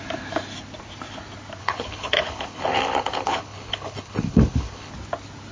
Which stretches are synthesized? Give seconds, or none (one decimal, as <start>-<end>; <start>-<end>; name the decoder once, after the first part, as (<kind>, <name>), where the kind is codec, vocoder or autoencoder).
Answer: 1.6-4.9 (codec, HILCodec)